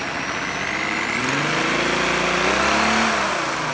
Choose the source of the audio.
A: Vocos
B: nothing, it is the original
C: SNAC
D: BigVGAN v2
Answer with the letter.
B